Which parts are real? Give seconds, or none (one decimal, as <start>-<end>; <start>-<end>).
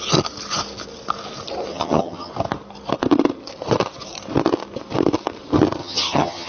0.0-1.7; 2.3-5.8